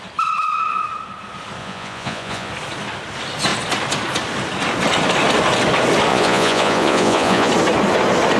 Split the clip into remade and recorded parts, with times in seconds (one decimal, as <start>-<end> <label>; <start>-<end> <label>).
0.0-1.6 recorded; 1.6-2.5 remade; 2.5-6.1 recorded; 6.1-7.5 remade; 7.5-8.4 recorded